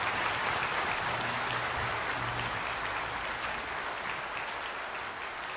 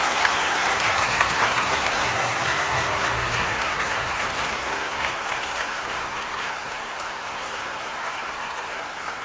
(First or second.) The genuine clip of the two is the first